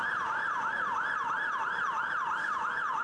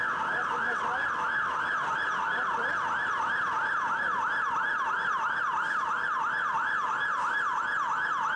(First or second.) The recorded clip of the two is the second